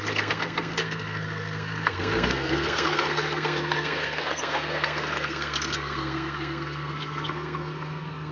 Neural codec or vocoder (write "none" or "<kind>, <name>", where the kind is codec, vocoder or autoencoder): codec, SNAC